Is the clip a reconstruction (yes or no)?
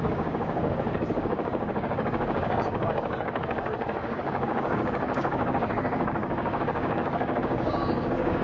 yes